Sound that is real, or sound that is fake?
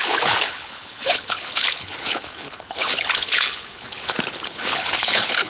fake